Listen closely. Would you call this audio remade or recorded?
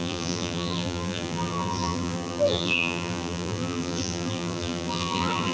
remade